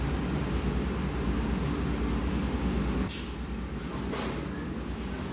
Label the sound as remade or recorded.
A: recorded